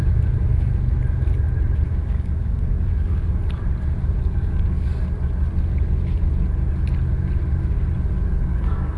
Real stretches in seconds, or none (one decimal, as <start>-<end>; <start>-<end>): 0.0-2.0; 3.4-4.2; 4.9-8.3